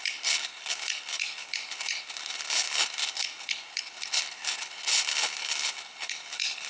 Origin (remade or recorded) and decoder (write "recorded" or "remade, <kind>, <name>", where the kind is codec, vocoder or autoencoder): remade, codec, HILCodec